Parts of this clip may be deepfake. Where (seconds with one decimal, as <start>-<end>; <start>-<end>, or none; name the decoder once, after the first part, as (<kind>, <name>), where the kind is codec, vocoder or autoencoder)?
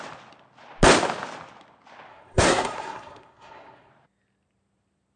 2.1-3.9 (codec, SNAC)